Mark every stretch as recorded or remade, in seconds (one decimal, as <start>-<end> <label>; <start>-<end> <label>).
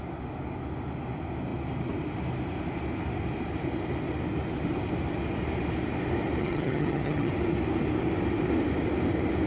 0.0-6.4 recorded; 6.4-7.3 remade; 7.3-9.5 recorded